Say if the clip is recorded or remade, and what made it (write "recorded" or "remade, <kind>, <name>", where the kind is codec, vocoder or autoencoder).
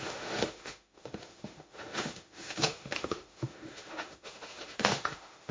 remade, autoencoder, DAC-VAE